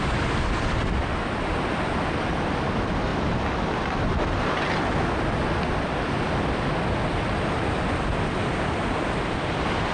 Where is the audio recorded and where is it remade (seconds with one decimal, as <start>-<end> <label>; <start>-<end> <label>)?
0.0-9.9 recorded